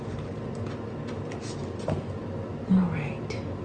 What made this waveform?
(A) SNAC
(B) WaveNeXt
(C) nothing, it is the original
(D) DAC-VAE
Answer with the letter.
C